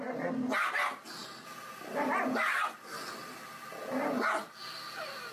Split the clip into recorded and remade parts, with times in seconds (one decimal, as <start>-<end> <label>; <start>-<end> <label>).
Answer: 0.0-5.3 recorded